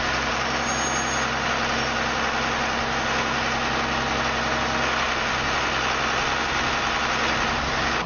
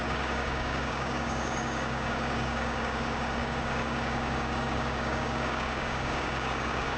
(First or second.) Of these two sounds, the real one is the first